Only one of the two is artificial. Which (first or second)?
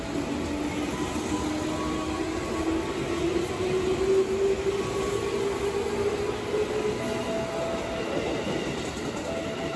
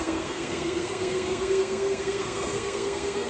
second